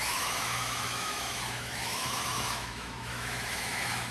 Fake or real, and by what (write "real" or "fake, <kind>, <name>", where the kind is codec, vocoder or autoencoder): fake, autoencoder, DAC-VAE